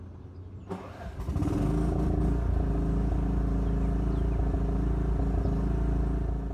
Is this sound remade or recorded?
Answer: recorded